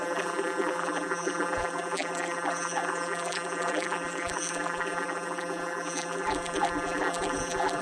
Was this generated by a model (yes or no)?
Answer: yes